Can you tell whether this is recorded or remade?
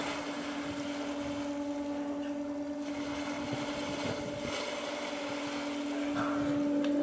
recorded